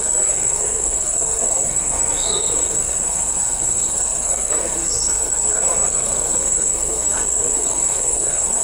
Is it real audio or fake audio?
fake